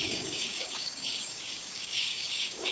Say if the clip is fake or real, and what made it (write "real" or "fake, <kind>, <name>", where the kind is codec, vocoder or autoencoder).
fake, codec, DAC